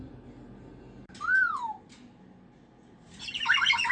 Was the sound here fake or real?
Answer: real